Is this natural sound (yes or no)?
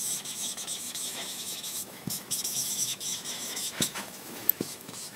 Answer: no